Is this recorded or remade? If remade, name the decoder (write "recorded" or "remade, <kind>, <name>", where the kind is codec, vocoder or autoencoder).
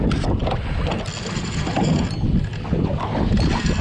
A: recorded